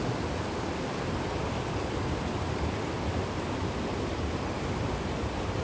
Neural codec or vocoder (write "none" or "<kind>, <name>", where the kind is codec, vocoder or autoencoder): none